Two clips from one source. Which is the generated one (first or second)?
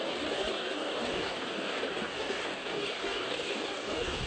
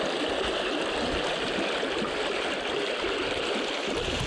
first